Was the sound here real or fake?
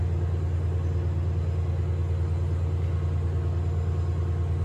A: real